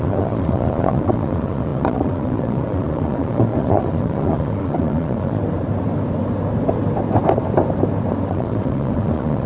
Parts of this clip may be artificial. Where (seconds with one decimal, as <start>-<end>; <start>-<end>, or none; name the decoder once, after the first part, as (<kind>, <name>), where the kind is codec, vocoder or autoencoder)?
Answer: 0.0-5.4 (vocoder, Vocos); 8.3-9.5